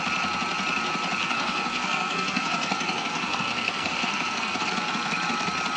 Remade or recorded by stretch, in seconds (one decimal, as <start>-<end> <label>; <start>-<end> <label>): 0.0-1.2 recorded; 1.2-4.7 remade; 4.7-5.8 recorded

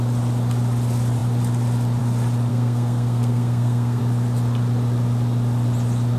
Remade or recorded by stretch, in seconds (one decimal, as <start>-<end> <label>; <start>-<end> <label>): 0.0-2.5 recorded; 2.5-4.0 remade; 4.0-6.2 recorded